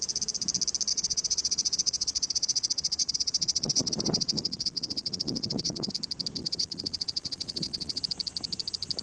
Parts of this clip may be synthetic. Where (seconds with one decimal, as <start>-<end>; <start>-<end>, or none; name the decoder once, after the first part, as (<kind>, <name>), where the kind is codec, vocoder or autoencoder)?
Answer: 0.9-5.9 (vocoder, Vocos); 6.4-8.0